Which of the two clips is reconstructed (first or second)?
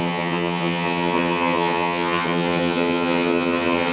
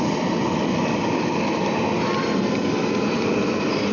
first